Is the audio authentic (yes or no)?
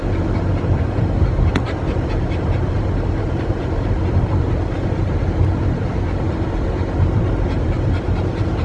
yes